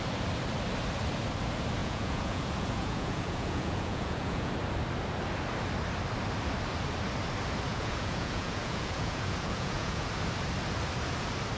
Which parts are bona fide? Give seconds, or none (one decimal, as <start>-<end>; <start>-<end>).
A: 0.0-1.8; 4.5-7.7; 10.1-11.6